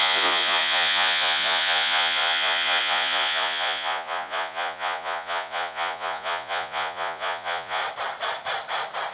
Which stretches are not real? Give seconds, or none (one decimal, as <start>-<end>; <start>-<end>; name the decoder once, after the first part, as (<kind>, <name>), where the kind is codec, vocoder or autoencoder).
0.0-7.8 (vocoder, Vocos)